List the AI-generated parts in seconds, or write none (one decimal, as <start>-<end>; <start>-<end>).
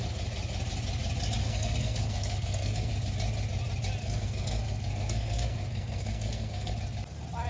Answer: 1.4-2.9; 4.0-6.7